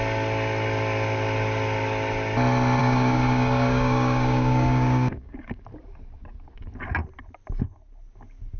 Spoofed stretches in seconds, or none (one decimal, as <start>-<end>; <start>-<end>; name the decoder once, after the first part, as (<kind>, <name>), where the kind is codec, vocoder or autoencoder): 2.8-5.6 (codec, DAC)